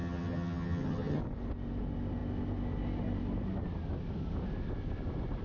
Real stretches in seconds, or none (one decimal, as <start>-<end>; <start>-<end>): 1.2-5.4